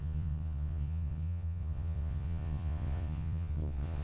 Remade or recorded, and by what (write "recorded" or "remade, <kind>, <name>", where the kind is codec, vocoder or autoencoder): remade, vocoder, Vocos